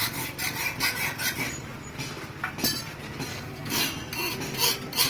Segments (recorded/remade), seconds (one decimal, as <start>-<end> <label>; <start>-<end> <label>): 0.0-3.3 recorded; 3.3-3.8 remade; 3.8-5.1 recorded